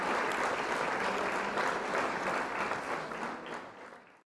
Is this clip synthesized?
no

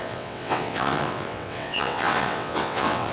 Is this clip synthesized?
yes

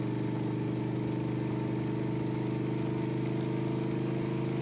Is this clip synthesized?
no